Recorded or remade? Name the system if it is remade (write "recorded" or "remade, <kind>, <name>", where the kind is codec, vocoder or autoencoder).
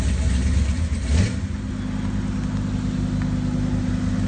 recorded